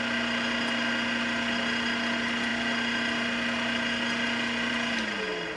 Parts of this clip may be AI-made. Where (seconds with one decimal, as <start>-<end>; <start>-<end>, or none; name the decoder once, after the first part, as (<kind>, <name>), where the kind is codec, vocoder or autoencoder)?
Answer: none